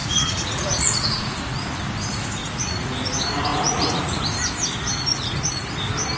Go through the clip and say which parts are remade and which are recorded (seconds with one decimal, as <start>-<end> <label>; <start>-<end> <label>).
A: 0.0-1.6 remade; 1.6-2.4 recorded; 2.4-2.9 remade; 2.9-3.5 recorded; 3.5-4.2 remade; 4.2-5.1 recorded; 5.1-5.7 remade; 5.7-6.2 recorded